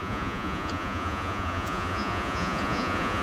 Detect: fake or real fake